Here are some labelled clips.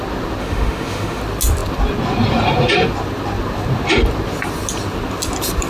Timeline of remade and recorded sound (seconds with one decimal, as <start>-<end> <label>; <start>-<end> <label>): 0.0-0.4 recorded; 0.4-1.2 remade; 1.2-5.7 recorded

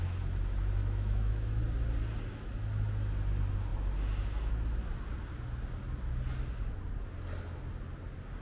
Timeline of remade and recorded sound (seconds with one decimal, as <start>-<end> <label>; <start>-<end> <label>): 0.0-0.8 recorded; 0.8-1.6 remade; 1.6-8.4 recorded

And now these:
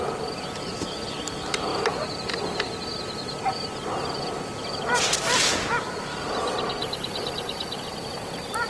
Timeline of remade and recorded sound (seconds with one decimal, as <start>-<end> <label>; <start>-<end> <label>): 0.0-8.7 recorded

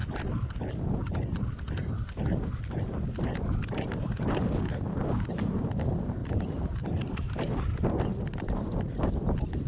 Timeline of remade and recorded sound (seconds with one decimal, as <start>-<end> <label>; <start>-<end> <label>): 0.0-6.2 recorded; 6.2-7.5 remade; 7.5-9.7 recorded

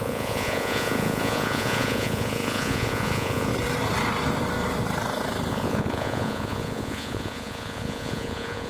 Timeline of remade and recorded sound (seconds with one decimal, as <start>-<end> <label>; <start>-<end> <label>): 0.0-3.5 remade; 3.5-5.5 recorded; 5.5-8.7 remade